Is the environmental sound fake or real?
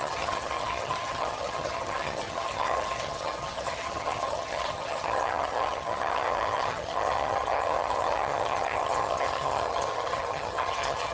fake